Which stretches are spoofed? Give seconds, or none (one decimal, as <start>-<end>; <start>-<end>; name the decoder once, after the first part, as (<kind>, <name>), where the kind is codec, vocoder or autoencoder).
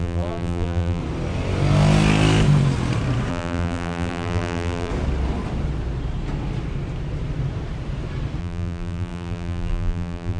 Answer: 0.0-1.0 (vocoder, BigVGAN v2); 3.3-4.9; 8.4-10.4